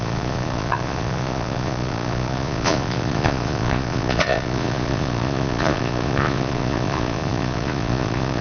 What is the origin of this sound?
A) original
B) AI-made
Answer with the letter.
B